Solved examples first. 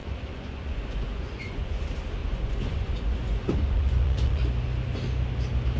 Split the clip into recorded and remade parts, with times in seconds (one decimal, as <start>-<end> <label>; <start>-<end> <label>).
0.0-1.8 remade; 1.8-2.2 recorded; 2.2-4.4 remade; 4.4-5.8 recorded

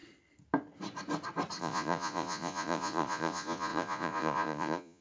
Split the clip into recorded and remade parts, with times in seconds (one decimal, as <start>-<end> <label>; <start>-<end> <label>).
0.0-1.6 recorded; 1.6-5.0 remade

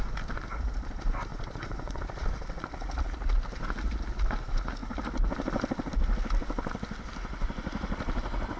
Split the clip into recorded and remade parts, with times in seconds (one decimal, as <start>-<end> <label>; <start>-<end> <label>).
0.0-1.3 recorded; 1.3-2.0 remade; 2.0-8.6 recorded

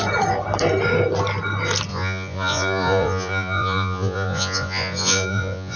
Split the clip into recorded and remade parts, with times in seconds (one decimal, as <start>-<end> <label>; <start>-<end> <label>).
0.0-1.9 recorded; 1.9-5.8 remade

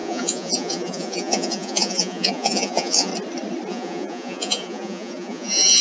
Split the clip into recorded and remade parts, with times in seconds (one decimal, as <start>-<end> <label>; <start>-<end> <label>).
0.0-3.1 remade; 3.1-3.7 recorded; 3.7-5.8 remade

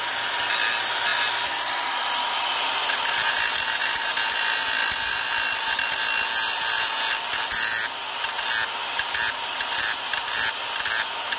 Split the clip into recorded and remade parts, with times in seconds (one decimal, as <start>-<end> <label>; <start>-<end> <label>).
0.0-11.4 recorded